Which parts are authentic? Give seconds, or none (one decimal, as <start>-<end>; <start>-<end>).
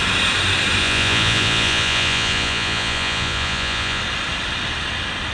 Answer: 0.0-0.8; 4.0-5.3